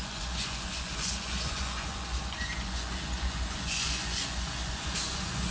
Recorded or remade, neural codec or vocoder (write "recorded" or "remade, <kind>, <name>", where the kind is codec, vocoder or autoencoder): remade, vocoder, Vocos